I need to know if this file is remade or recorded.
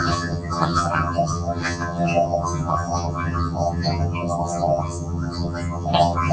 remade